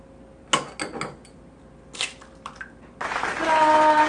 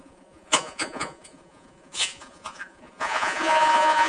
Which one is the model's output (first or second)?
second